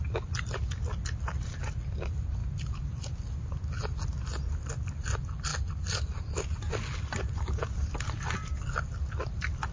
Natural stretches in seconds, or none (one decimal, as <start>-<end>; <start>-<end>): 0.0-9.7